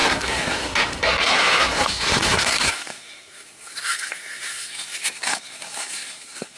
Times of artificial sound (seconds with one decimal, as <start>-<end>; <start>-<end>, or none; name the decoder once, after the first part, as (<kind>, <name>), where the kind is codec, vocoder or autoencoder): 0.0-6.6 (codec, SNAC)